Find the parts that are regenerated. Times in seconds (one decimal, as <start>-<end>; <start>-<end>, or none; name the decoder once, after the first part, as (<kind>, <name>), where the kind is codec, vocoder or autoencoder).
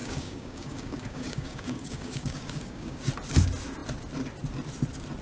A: 0.0-3.1 (codec, DAC)